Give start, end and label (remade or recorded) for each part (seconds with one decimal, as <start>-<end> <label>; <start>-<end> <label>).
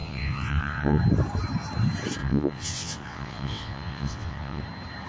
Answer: 0.0-1.0 remade; 1.0-2.2 recorded; 2.2-4.6 remade; 4.6-5.1 recorded